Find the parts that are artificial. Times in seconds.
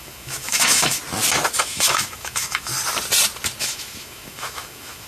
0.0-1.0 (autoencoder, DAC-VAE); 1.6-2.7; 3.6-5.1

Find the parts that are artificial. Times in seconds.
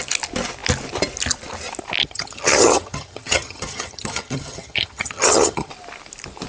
2.0-5.7 (vocoder, HiFi-GAN)